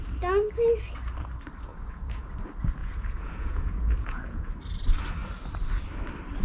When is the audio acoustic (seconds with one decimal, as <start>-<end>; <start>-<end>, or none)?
0.0-1.7; 2.3-2.8; 4.5-6.4